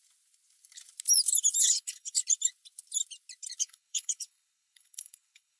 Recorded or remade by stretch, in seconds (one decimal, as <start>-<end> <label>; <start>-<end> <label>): 0.0-1.6 recorded; 1.6-2.2 remade; 2.2-3.6 recorded; 3.6-5.6 remade